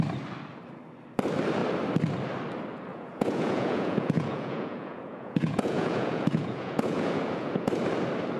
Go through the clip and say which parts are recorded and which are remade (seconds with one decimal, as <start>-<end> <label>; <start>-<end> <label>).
0.0-2.9 recorded; 2.9-7.7 remade; 7.7-8.4 recorded